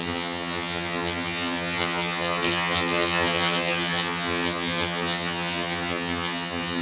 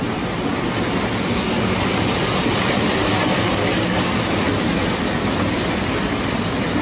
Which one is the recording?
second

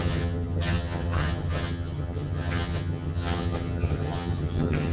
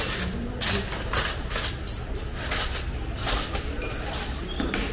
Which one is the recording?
second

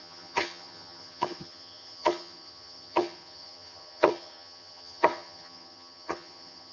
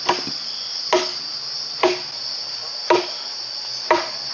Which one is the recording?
second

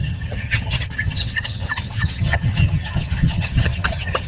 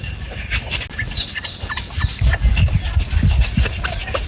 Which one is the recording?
second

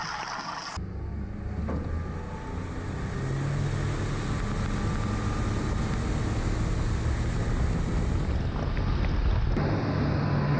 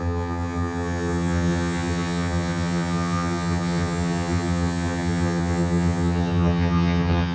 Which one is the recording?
first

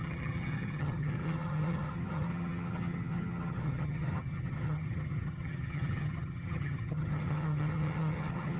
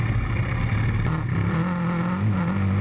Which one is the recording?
second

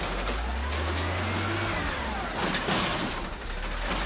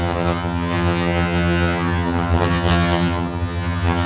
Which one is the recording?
first